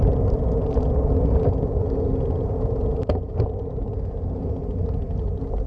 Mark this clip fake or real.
real